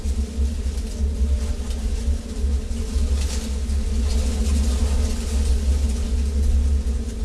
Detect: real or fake real